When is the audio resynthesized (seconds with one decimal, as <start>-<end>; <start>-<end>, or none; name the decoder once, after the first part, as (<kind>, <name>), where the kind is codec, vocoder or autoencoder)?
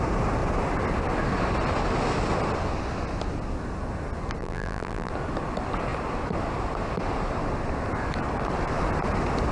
4.4-5.1 (vocoder, BigVGAN v2)